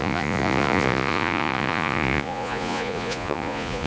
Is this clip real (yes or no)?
no